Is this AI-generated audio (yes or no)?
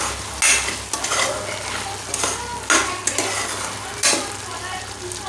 no